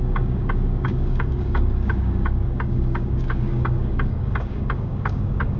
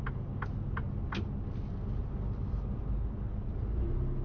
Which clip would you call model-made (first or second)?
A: first